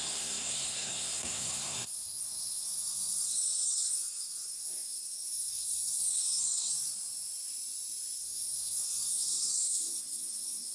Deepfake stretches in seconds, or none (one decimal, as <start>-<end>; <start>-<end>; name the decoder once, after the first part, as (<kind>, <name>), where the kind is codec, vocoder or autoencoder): 0.0-6.7 (codec, SNAC); 8.2-10.7